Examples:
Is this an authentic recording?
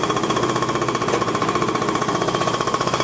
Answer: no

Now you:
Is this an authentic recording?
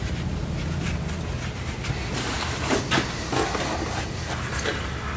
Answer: yes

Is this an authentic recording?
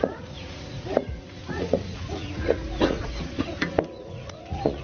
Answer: no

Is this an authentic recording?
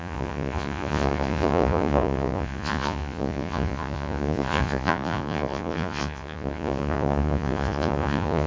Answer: no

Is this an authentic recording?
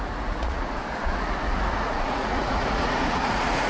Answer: no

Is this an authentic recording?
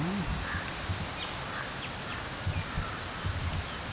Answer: yes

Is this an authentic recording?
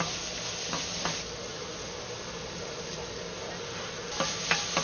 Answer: yes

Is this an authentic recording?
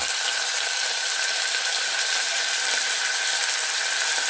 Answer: yes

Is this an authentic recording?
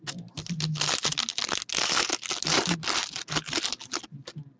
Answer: yes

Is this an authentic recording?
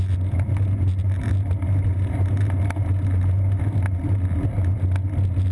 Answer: yes